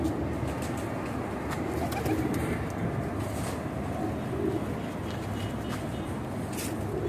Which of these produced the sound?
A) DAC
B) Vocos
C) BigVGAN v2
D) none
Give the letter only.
D